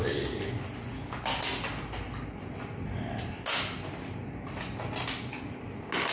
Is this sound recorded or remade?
recorded